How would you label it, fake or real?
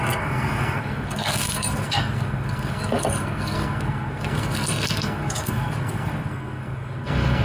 fake